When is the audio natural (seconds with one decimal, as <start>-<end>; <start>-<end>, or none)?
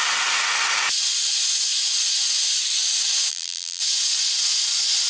0.0-3.3; 3.8-5.1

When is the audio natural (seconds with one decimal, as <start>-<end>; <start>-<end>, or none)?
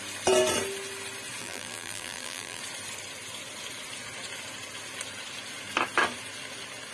0.0-1.4; 2.6-6.9